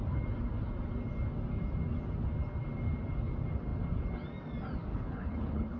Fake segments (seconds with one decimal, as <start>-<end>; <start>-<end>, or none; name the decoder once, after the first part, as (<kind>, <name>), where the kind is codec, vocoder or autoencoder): 4.9-5.8 (codec, HILCodec)